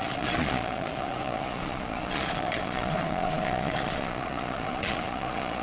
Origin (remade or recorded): remade